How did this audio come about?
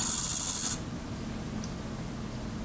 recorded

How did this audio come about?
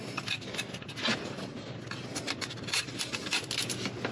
recorded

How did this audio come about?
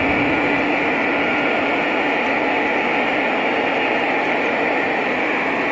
recorded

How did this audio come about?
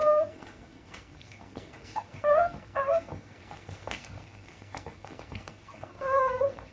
remade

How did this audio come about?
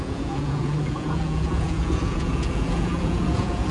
remade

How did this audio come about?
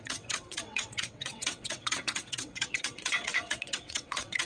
remade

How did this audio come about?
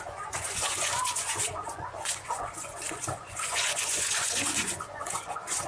remade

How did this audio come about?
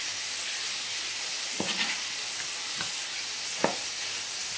recorded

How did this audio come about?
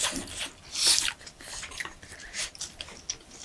recorded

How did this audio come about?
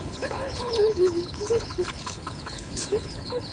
remade